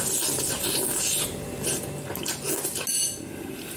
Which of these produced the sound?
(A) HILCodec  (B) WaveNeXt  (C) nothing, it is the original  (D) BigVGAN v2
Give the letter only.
C